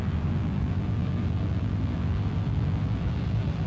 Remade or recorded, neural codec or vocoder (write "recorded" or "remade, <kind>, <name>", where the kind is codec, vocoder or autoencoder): remade, vocoder, BigVGAN v2